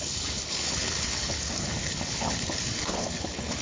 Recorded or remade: remade